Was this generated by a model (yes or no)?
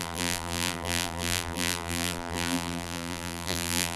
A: yes